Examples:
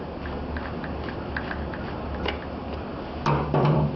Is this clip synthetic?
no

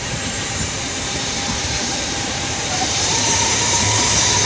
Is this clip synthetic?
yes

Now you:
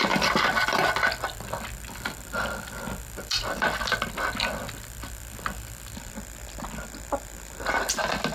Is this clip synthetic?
no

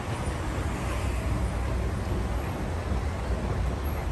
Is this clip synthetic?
no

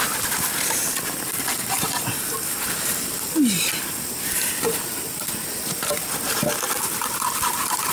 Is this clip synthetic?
yes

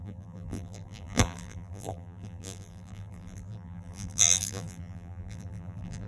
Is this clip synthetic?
yes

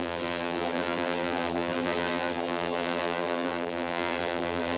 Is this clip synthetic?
yes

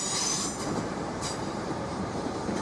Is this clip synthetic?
yes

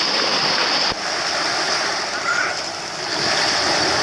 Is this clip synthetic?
no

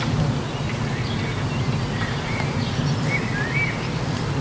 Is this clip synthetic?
no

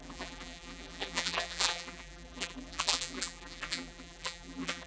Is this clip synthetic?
yes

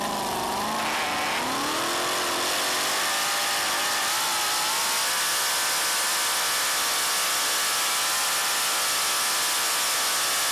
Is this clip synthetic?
no